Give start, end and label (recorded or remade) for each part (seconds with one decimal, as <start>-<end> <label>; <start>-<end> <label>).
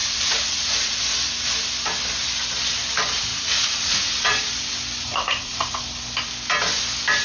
0.0-1.0 remade; 1.0-3.3 recorded; 3.3-4.4 remade; 4.4-5.1 recorded; 5.1-5.8 remade; 5.8-7.2 recorded